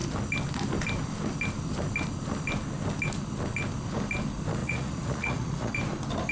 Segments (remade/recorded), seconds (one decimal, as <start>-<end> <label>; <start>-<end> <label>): 0.0-4.6 recorded; 4.6-5.7 remade; 5.7-6.3 recorded